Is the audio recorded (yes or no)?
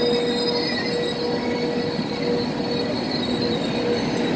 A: yes